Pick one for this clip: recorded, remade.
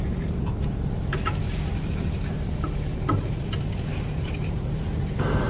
remade